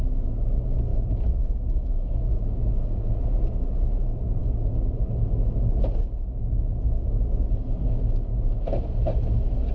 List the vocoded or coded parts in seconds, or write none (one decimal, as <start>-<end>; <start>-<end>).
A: 0.9-2.1